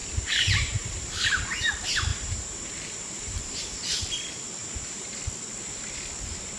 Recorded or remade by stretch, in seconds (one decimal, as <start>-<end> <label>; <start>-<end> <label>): 0.0-1.7 remade; 1.7-2.1 recorded; 2.1-3.9 remade; 3.9-4.6 recorded; 4.6-5.2 remade; 5.2-6.6 recorded